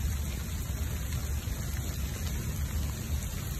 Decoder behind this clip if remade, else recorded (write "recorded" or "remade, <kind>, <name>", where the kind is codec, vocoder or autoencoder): recorded